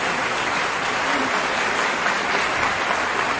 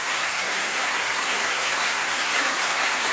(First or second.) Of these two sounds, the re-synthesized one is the second